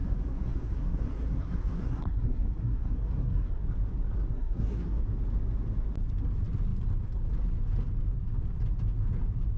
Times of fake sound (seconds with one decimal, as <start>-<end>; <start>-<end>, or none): 0.0-3.6; 4.3-5.0